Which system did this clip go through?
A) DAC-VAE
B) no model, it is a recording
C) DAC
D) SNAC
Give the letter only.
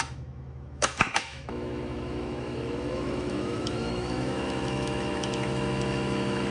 A